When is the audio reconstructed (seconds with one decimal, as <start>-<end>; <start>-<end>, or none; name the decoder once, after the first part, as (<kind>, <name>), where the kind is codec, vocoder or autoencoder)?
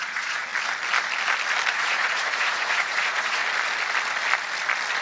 0.0-0.5 (vocoder, Vocos); 1.7-3.4